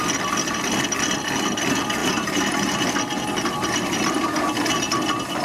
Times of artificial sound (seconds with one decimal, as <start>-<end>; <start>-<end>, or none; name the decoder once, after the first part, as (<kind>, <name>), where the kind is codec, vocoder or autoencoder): 2.0-2.8 (vocoder, BigVGAN v2); 3.6-4.2